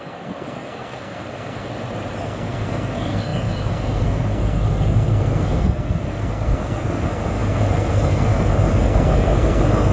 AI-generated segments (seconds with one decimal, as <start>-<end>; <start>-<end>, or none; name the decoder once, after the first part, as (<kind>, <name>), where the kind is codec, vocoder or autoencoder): 0.0-1.7 (codec, SNAC); 2.2-9.9